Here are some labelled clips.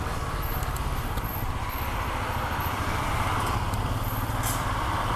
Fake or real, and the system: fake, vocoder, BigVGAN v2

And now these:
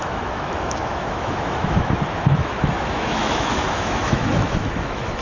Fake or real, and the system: fake, autoencoder, DAC-VAE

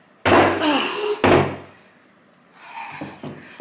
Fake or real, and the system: real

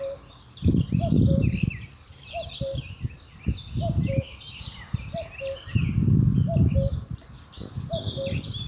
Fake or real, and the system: real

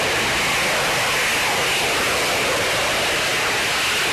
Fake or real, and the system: real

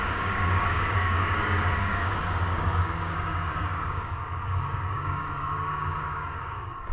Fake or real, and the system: fake, codec, DAC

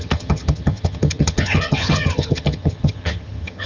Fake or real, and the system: fake, vocoder, HiFi-GAN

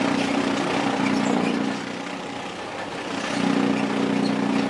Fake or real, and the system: real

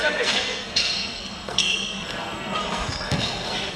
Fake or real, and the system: fake, codec, SNAC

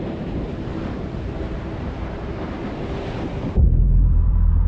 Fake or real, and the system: fake, vocoder, BigVGAN v2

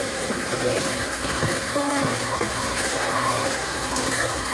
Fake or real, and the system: fake, codec, SNAC